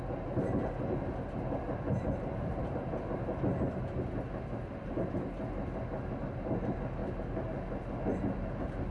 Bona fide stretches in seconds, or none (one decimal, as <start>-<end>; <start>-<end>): 0.0-8.9